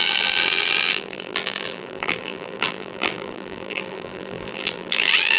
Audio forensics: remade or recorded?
remade